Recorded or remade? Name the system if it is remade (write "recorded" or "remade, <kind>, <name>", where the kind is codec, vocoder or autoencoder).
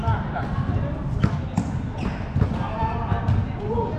recorded